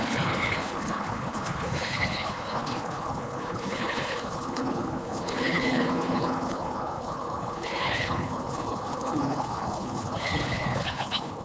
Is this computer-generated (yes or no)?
yes